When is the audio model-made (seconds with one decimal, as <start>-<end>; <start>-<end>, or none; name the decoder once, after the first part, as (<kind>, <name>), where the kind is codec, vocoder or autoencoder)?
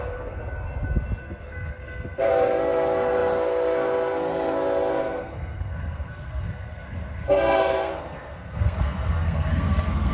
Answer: 0.0-0.4 (codec, SNAC); 1.2-10.1